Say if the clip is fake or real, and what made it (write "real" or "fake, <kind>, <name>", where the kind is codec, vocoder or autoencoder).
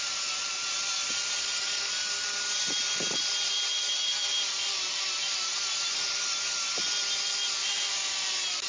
real